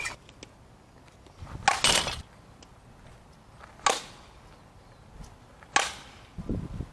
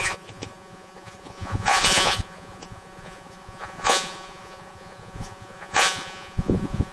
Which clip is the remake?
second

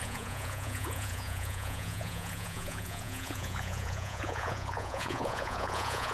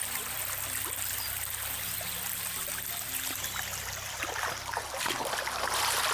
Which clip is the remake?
first